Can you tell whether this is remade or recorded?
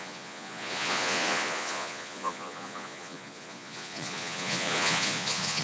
remade